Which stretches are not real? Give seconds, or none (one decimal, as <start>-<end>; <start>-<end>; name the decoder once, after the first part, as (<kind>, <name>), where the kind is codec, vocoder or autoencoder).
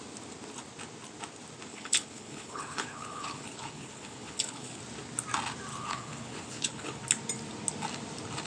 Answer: 1.7-4.8 (codec, HILCodec); 5.7-7.0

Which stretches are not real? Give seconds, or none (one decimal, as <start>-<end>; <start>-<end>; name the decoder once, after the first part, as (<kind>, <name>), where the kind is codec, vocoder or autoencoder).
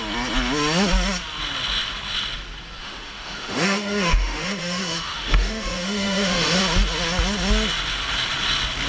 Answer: 2.8-6.6 (autoencoder, DAC-VAE)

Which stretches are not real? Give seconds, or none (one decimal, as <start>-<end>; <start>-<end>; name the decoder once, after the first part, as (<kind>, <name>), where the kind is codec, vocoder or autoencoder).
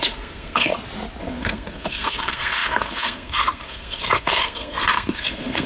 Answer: 0.0-0.7 (codec, SNAC); 1.2-5.7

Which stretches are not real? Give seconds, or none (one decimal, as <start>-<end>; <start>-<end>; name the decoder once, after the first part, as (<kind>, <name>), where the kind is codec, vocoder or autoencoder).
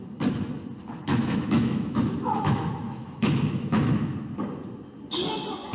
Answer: 1.0-4.1 (autoencoder, DAC-VAE)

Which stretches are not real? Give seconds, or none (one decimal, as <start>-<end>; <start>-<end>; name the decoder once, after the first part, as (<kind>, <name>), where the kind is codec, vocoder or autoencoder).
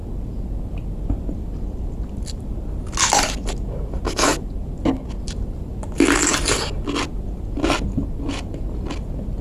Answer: none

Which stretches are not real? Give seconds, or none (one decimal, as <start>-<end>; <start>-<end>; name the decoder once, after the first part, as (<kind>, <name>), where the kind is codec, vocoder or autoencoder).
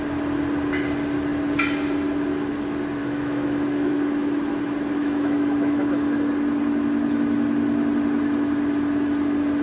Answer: 3.0-3.9 (autoencoder, DAC-VAE); 5.0-6.3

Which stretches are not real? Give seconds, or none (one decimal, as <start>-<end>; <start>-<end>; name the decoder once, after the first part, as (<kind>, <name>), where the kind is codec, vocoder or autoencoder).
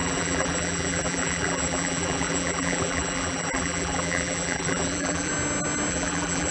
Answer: 0.0-5.3 (vocoder, BigVGAN v2); 5.9-6.5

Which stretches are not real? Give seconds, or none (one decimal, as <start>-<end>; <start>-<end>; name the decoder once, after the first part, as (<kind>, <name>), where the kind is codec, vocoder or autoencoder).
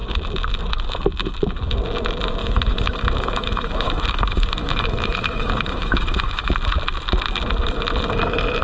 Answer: 2.4-6.5 (autoencoder, DAC-VAE)